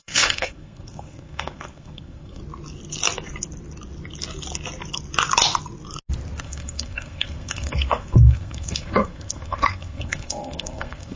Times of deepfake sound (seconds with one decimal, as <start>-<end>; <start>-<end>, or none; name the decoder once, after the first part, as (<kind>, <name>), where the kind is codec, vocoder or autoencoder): 0.0-2.4 (codec, SNAC); 6.4-11.2